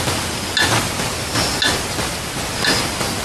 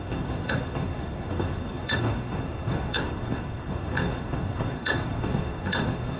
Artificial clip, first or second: second